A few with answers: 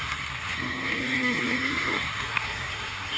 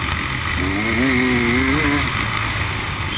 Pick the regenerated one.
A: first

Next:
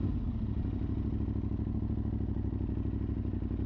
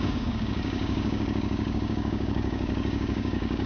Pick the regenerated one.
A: second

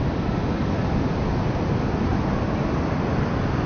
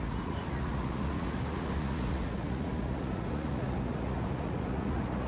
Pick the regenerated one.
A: second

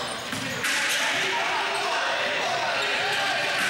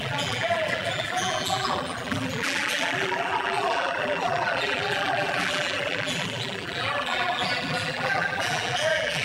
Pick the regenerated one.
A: second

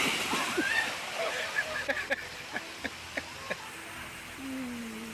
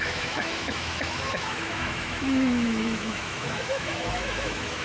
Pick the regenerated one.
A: second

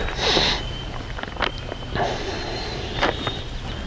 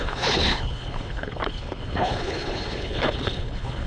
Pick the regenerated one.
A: second